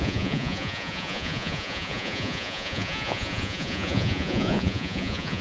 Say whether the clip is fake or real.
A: fake